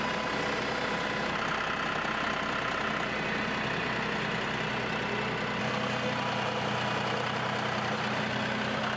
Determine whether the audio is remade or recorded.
recorded